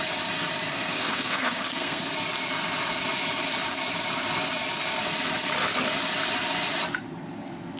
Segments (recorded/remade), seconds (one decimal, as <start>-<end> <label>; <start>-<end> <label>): 0.0-0.7 recorded; 0.7-2.0 remade; 2.0-7.8 recorded